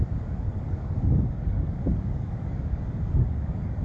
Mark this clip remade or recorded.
remade